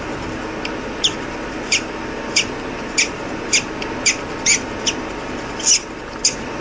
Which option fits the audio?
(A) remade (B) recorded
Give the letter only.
B